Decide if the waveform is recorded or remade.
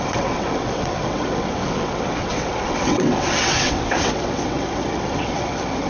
remade